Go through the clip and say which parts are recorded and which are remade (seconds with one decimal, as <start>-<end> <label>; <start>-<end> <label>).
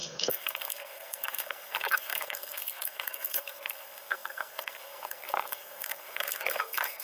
0.0-7.0 remade